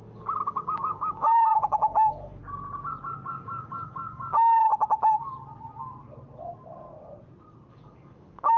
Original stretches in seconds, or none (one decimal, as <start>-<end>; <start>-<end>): 2.4-3.3; 4.7-7.7